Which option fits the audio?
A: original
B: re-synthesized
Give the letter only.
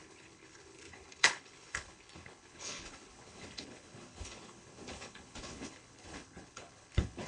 B